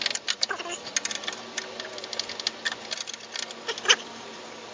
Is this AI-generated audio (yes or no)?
no